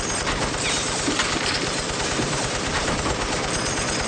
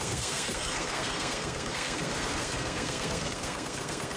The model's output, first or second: second